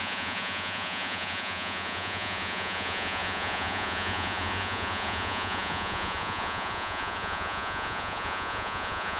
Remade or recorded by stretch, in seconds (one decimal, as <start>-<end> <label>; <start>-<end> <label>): 0.0-9.2 remade

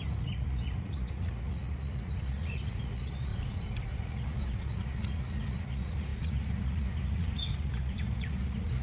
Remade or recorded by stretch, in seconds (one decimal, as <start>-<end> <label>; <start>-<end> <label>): 0.0-3.3 remade; 3.3-3.9 recorded; 3.9-8.8 remade

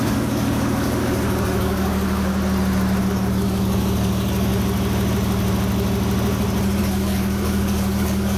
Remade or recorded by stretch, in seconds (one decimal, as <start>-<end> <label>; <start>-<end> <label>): 0.0-2.3 remade; 2.3-3.0 recorded; 3.0-4.5 remade; 4.5-6.8 recorded; 6.8-8.4 remade

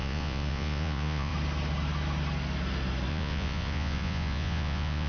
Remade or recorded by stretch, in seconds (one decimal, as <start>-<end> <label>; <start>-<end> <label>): 0.0-1.3 remade; 1.3-3.1 recorded; 3.1-5.1 remade

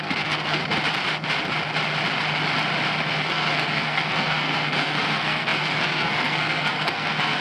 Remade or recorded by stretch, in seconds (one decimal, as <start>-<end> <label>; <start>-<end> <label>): 0.0-0.6 remade; 0.6-3.0 recorded; 3.0-7.4 remade

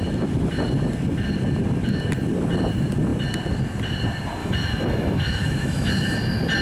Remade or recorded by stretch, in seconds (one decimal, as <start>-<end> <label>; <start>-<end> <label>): 0.0-4.4 recorded; 4.4-5.9 remade; 5.9-6.6 recorded

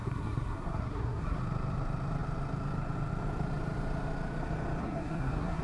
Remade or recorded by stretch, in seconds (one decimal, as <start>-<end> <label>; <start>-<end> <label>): 0.0-1.4 remade; 1.4-4.8 recorded; 4.8-5.6 remade

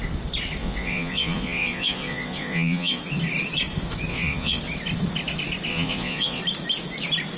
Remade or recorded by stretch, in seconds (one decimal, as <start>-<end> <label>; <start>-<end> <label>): 0.0-0.6 recorded; 0.6-3.0 remade; 3.0-4.1 recorded; 4.1-4.6 remade; 4.6-5.7 recorded; 5.7-6.4 remade; 6.4-7.4 recorded